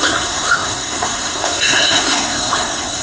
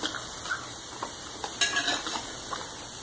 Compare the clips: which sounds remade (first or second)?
first